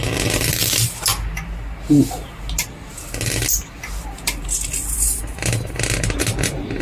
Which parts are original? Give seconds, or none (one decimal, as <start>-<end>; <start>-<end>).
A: 1.1-5.2